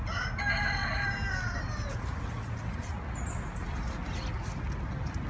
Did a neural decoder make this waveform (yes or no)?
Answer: no